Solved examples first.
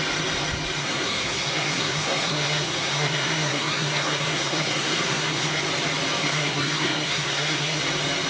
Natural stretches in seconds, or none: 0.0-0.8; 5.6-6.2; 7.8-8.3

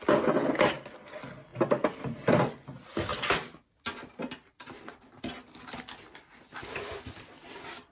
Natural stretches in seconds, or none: 0.0-7.9

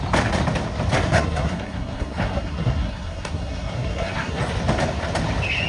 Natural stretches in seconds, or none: 0.0-1.0; 4.4-5.7

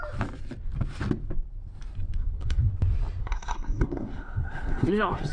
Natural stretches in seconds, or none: 0.0-2.2; 2.7-3.2

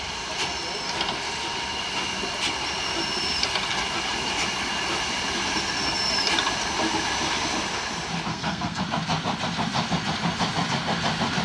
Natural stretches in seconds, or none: 0.0-8.3; 8.8-11.4